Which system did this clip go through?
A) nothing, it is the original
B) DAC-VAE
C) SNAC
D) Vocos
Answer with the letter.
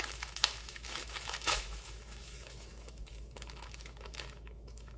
B